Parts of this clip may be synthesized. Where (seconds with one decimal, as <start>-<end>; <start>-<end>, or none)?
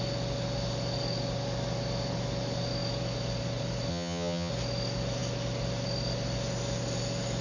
3.9-4.5